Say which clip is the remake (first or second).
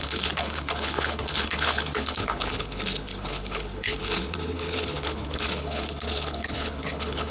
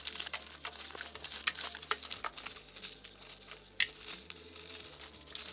first